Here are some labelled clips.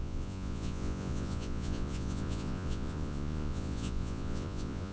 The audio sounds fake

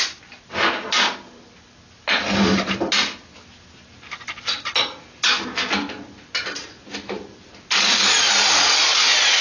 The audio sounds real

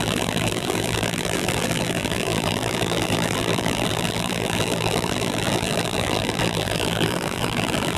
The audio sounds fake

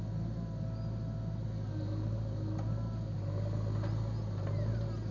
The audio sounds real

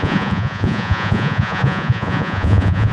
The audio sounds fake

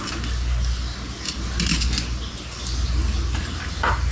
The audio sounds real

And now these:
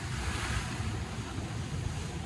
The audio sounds real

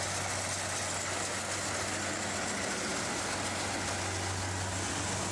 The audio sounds real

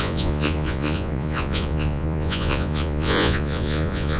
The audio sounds fake